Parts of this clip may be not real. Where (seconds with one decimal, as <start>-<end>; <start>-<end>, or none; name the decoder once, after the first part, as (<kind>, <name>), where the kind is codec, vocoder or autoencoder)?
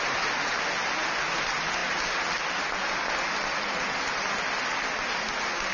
none